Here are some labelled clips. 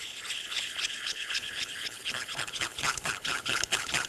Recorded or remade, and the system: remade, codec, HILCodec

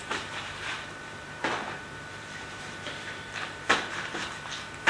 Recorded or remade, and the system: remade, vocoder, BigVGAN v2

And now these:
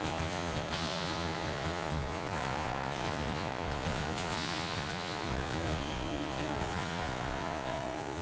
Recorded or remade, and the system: remade, vocoder, Vocos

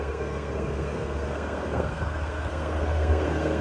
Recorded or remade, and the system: remade, codec, SNAC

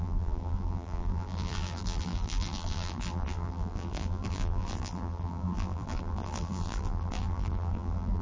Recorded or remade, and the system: remade, vocoder, BigVGAN v2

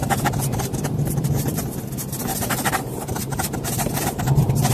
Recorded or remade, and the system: remade, vocoder, BigVGAN v2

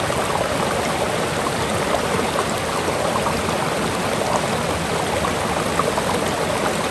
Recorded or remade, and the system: recorded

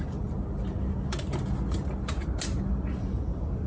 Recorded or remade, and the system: recorded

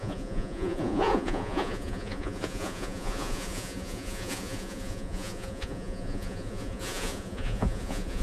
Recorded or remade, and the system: remade, vocoder, Vocos